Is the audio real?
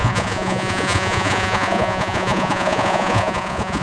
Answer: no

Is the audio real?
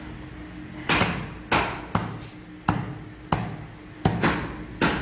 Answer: yes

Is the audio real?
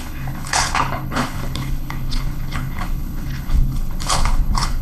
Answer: no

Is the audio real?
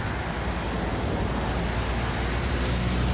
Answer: yes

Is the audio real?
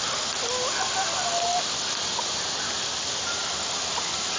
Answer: yes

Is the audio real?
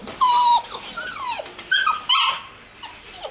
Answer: no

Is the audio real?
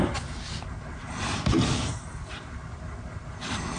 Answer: yes